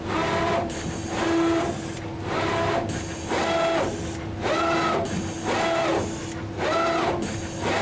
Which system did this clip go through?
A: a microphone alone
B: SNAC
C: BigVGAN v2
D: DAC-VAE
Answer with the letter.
A